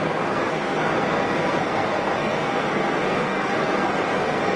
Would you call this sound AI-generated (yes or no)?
yes